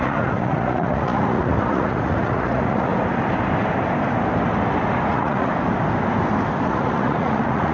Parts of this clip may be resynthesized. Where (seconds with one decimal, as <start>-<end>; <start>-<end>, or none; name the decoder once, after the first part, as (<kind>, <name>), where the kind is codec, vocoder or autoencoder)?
0.0-2.9 (vocoder, Vocos); 5.1-5.5; 6.6-7.7